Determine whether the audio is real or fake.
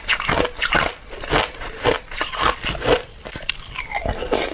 real